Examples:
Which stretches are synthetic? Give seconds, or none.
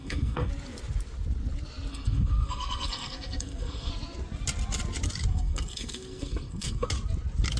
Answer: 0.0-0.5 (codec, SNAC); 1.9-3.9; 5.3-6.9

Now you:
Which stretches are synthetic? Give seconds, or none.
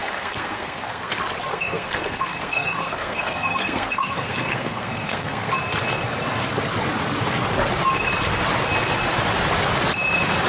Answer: 0.0-1.1 (codec, SNAC); 1.5-5.5